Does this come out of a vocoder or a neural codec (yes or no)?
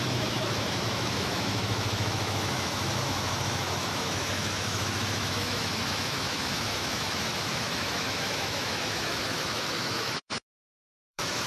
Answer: yes